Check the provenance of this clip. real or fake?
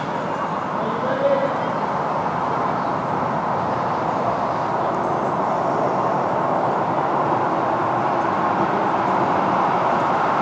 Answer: real